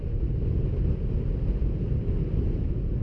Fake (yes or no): no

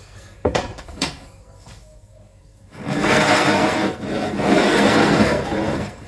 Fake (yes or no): yes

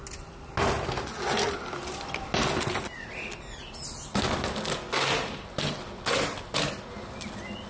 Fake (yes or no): no